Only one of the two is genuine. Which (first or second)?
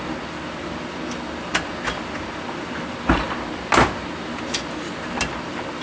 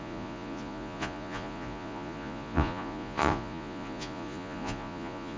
first